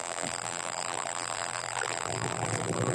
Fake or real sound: fake